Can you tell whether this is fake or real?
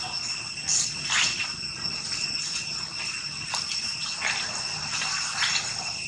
real